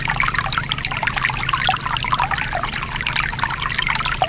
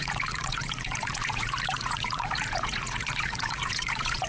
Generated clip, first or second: second